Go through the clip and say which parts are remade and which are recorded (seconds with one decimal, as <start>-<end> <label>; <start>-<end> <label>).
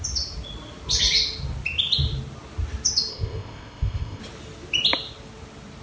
0.0-3.1 recorded; 3.1-4.2 remade; 4.2-5.8 recorded